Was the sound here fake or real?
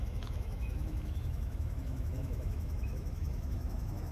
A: fake